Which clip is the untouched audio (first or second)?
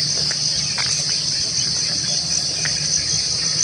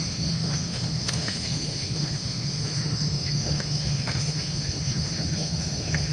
first